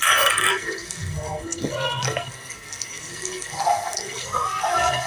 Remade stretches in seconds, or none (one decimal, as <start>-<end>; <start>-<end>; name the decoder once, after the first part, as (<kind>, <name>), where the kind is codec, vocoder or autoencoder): 0.0-5.1 (codec, SNAC)